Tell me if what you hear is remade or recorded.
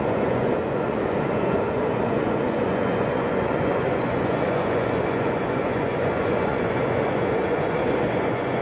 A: remade